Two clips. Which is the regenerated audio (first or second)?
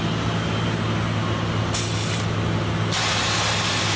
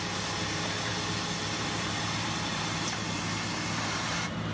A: second